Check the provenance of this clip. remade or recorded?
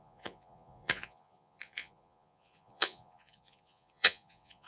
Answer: remade